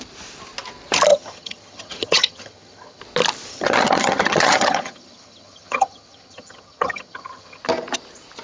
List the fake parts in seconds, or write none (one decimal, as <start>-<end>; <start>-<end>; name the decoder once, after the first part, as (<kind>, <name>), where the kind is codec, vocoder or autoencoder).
1.1-3.0 (vocoder, HiFi-GAN); 3.5-7.6